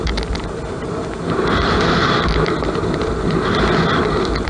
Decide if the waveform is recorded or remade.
recorded